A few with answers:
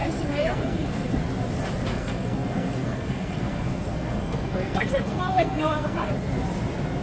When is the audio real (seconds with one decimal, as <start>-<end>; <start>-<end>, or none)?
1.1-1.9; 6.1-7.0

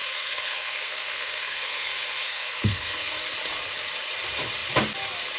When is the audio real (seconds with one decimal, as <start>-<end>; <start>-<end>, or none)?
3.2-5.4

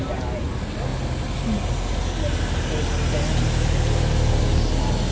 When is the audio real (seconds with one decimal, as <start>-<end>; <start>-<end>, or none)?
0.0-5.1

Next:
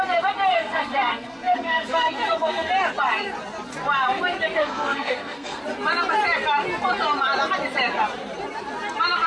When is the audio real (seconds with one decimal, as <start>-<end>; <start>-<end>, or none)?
0.0-0.5; 2.7-4.6; 5.6-9.3